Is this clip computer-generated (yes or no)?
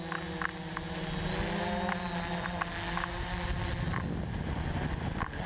no